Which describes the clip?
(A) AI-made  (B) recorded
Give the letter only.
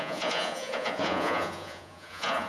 A